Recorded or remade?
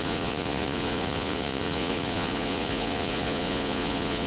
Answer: remade